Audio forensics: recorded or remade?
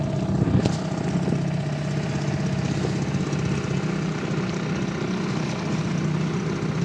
recorded